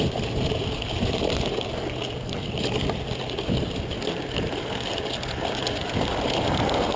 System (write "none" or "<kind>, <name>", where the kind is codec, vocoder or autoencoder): none